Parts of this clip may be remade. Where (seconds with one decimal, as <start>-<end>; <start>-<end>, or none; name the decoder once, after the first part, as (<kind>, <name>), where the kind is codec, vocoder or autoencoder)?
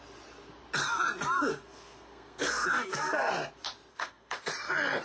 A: 1.5-3.3 (codec, SNAC); 3.9-4.5